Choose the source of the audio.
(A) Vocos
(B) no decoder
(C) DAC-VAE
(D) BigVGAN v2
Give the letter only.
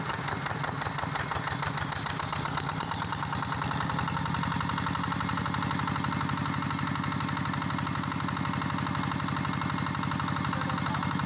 B